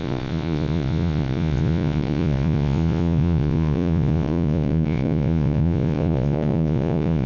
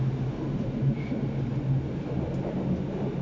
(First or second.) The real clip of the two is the second